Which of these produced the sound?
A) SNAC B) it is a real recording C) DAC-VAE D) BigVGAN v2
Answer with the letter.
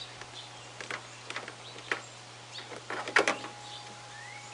B